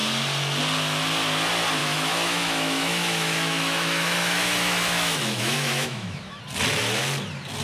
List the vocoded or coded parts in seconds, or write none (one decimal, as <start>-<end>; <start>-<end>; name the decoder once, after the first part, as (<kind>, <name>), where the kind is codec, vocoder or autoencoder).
1.8-6.4 (autoencoder, DAC-VAE)